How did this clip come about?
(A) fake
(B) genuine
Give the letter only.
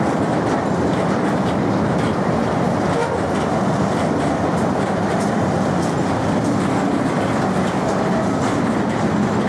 B